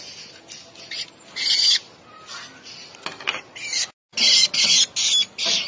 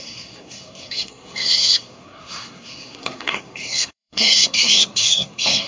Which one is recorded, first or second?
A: first